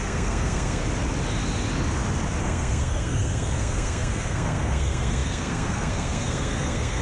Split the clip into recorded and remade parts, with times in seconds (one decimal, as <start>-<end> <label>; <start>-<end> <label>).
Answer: 0.0-0.8 remade; 0.8-2.4 recorded; 2.4-7.0 remade